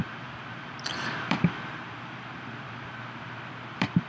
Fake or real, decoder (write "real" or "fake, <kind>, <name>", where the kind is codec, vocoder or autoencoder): fake, vocoder, BigVGAN v2